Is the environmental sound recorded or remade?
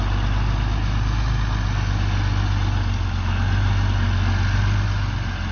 recorded